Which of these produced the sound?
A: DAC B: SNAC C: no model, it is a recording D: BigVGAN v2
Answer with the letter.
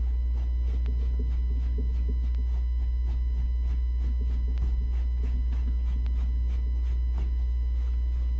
C